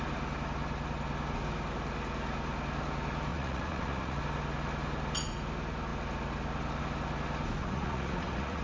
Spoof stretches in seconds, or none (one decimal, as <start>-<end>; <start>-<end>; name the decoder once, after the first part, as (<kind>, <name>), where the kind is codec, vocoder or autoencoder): 3.3-4.2 (vocoder, Vocos); 7.6-8.6